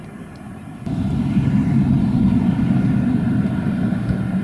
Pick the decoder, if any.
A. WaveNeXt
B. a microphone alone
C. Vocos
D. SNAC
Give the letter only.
B